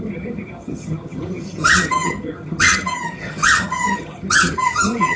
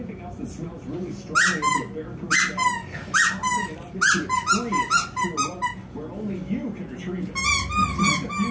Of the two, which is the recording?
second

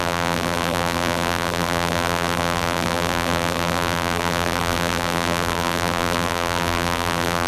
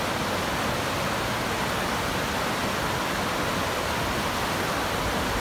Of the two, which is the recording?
second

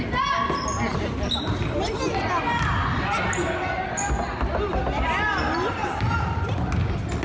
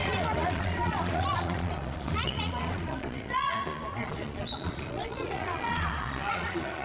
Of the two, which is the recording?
first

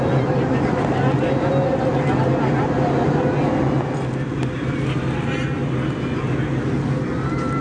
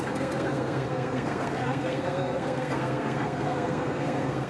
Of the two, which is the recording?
first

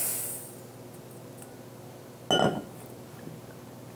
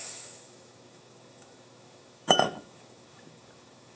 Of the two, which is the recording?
first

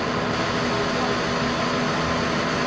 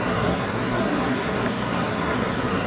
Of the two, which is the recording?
first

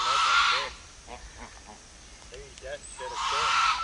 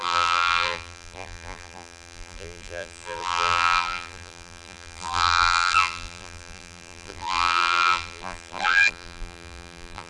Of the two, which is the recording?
first